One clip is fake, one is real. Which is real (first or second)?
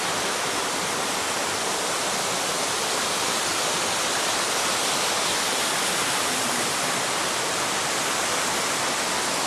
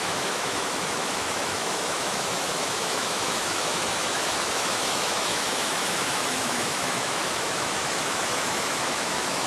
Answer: first